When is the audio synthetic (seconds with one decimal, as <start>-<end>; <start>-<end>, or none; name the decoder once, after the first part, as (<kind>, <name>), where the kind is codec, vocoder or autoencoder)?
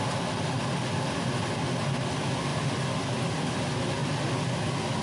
none